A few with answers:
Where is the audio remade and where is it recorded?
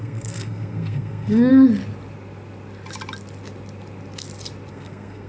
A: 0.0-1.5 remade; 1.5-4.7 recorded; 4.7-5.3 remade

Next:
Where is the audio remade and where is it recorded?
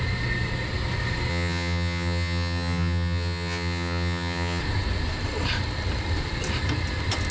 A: 0.0-1.3 recorded; 1.3-4.6 remade; 4.6-7.3 recorded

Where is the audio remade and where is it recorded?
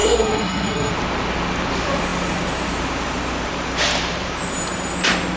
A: 0.0-0.9 remade; 0.9-5.4 recorded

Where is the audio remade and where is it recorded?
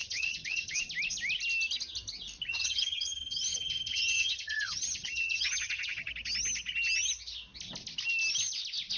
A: 0.0-0.8 remade; 0.8-2.5 recorded; 2.5-6.1 remade; 6.1-9.0 recorded